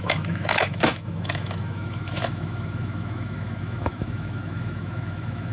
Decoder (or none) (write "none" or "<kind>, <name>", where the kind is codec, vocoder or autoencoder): autoencoder, DAC-VAE